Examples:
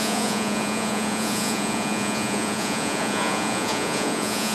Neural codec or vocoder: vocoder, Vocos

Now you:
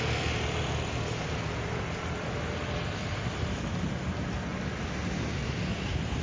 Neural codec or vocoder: none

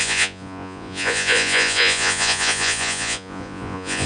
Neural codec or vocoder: vocoder, Vocos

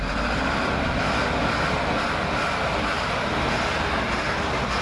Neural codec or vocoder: none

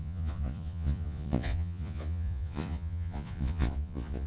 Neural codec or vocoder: vocoder, Vocos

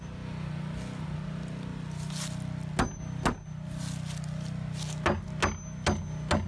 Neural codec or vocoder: none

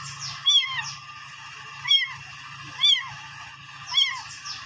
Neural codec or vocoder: none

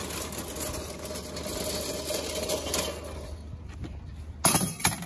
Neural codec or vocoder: none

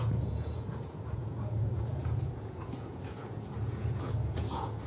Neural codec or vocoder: vocoder, Vocos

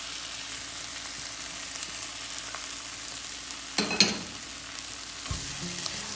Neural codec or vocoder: none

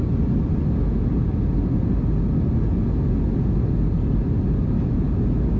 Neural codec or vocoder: none